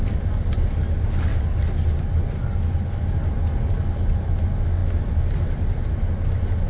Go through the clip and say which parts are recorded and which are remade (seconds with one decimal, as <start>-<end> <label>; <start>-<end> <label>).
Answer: 0.0-6.7 recorded